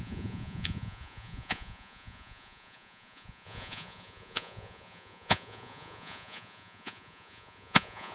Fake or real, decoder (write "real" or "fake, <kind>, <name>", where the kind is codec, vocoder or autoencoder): fake, vocoder, Vocos